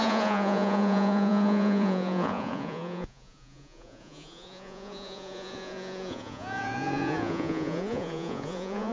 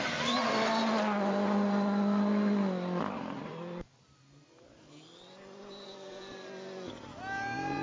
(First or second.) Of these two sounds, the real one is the second